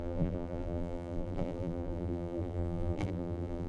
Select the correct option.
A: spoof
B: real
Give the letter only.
A